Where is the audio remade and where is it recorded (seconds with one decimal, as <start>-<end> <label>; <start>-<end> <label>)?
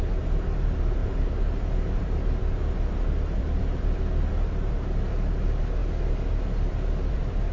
0.0-7.5 remade